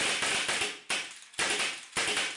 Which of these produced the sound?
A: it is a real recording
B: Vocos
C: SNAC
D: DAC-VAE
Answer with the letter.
A